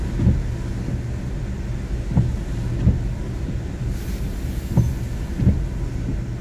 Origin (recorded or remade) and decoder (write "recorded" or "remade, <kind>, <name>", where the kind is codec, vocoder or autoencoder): recorded